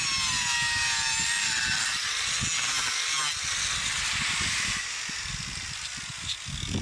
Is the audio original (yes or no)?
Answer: yes